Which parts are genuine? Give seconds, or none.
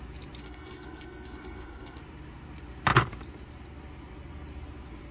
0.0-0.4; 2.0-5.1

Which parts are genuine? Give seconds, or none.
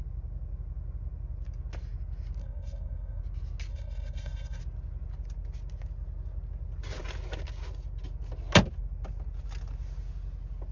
0.0-2.4; 3.2-3.7; 4.6-10.7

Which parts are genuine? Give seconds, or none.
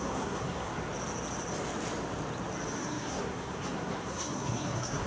0.7-2.8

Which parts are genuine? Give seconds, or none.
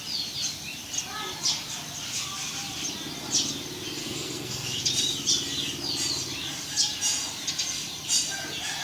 0.0-4.0; 4.8-8.8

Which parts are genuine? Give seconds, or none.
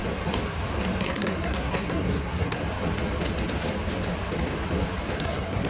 0.0-1.0; 2.6-5.2